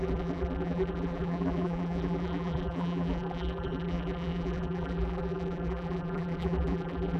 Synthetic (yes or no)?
yes